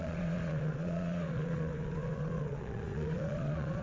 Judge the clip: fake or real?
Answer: fake